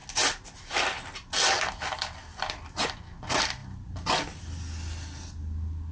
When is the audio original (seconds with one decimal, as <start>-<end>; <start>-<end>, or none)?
0.0-5.9